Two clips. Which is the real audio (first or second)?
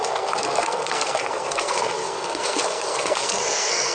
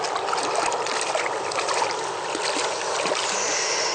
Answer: second